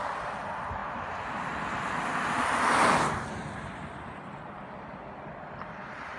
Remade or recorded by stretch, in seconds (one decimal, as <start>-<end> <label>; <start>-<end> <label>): 0.0-6.2 recorded